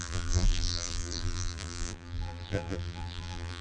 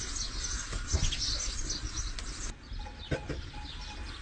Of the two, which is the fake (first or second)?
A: first